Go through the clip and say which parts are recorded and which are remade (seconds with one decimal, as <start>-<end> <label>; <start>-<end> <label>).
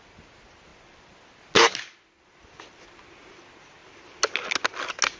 0.0-5.2 recorded